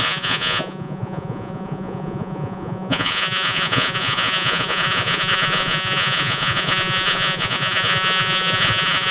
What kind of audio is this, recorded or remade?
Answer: remade